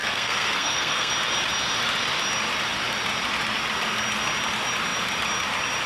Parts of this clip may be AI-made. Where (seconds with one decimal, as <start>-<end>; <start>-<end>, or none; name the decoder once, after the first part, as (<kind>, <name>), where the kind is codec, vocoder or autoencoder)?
0.0-1.1 (codec, SNAC)